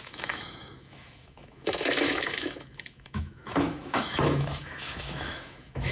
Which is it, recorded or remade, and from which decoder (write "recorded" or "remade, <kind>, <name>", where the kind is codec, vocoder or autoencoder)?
remade, autoencoder, DAC-VAE